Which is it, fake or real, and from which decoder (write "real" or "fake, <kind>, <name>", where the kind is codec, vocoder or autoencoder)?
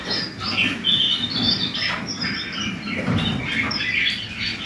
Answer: fake, vocoder, BigVGAN v2